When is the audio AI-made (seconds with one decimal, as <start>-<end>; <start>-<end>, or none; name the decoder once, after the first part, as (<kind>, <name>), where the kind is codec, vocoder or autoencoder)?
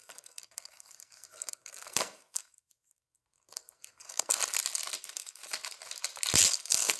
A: 0.0-4.4 (codec, SNAC); 5.0-5.4; 6.4-7.0